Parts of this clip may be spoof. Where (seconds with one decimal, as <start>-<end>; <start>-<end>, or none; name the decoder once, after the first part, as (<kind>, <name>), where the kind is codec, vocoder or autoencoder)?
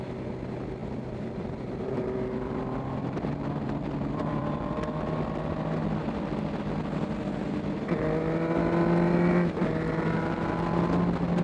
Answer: 0.8-4.8 (vocoder, BigVGAN v2)